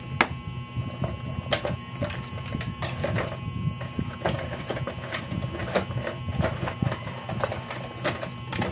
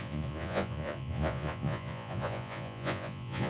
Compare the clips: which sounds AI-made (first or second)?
second